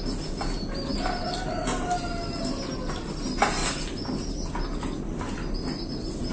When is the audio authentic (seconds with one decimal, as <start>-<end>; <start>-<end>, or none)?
0.0-6.3